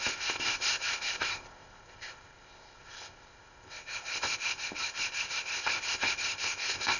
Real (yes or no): no